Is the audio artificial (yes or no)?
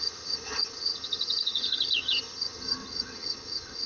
yes